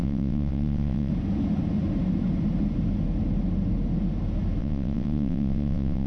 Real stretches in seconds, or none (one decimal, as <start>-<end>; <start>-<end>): 1.1-4.6